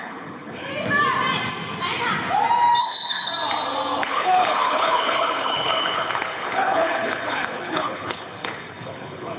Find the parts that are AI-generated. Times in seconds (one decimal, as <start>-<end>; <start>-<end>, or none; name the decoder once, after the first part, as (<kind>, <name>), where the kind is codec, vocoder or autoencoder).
0.0-0.7 (codec, HILCodec); 2.8-3.3; 4.0-9.4